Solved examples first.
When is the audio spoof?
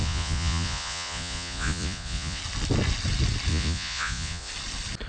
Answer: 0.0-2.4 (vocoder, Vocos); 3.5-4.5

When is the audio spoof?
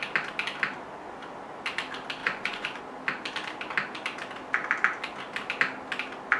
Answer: 2.2-2.8 (vocoder, Vocos)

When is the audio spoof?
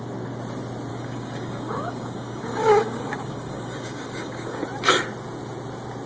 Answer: 0.9-4.6 (codec, DAC)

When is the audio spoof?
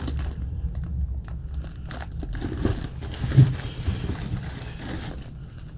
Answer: none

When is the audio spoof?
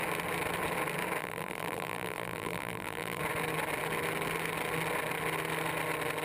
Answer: 1.2-3.2 (vocoder, BigVGAN v2)